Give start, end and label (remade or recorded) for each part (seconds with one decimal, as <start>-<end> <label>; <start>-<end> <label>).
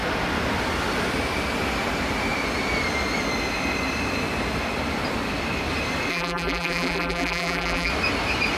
0.0-6.1 recorded; 6.1-7.9 remade; 7.9-8.6 recorded